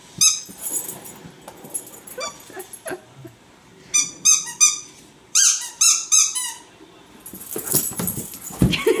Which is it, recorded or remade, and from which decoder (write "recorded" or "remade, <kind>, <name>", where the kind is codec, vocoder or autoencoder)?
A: recorded